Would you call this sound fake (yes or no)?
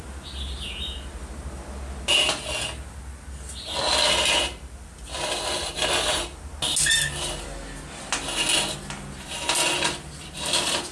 no